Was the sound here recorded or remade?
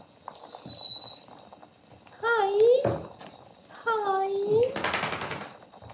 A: recorded